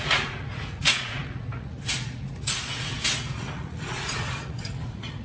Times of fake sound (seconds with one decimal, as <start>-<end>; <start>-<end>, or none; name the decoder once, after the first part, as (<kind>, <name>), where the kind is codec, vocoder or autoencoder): 0.0-5.2 (vocoder, Vocos)